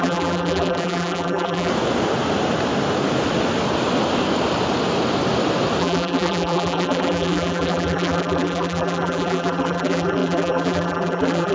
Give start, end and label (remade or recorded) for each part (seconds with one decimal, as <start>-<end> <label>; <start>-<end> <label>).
0.0-1.7 remade; 1.7-5.8 recorded; 5.8-11.5 remade